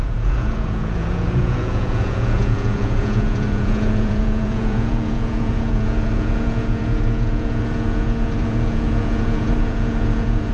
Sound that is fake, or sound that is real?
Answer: fake